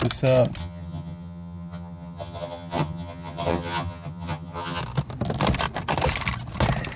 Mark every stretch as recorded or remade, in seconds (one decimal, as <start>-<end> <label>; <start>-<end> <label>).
0.0-0.6 recorded; 0.6-4.8 remade; 4.8-7.0 recorded